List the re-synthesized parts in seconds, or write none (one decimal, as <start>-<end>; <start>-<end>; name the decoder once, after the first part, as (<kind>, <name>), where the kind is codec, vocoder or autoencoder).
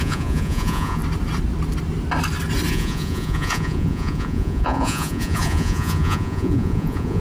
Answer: 0.0-1.0 (vocoder, Vocos); 2.7-7.2